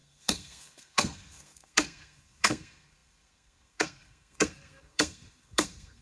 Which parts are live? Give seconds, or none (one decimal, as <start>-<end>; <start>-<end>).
none